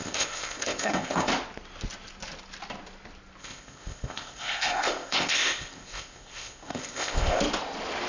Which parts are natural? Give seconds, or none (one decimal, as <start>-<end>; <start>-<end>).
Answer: 1.3-3.4; 7.4-8.1